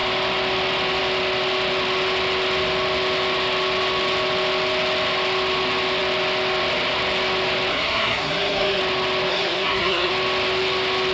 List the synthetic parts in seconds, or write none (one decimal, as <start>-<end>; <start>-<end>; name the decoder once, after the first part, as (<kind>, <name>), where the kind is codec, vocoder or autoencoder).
7.7-8.8 (codec, SNAC); 9.3-10.1